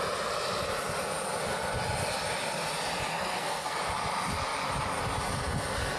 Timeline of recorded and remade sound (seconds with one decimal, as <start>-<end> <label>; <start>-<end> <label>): 0.0-3.1 recorded; 3.1-3.8 remade; 3.8-6.0 recorded